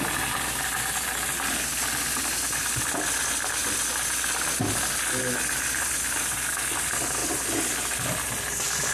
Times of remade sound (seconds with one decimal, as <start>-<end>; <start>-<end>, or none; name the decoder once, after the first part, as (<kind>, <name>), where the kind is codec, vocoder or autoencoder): none